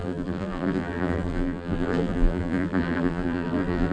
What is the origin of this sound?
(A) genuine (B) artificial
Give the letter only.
B